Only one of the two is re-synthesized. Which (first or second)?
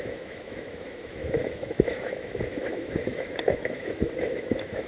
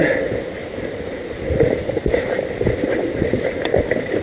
first